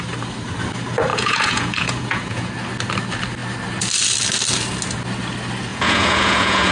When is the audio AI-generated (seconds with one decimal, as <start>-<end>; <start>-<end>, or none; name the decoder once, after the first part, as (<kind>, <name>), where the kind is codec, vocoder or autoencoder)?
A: 1.1-2.5 (vocoder, Vocos); 5.7-6.7